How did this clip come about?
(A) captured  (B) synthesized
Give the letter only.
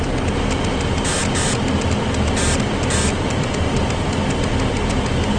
A